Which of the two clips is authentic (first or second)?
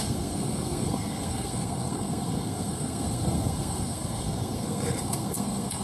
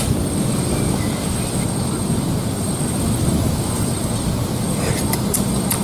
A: second